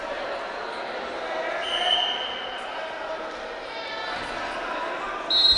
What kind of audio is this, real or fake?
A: real